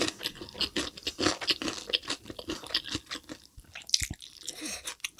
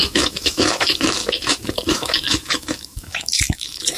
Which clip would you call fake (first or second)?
second